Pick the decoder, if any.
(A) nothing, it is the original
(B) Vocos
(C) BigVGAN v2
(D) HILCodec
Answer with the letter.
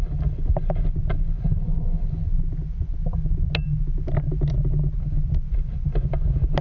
A